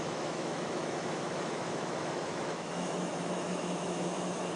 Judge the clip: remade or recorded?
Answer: remade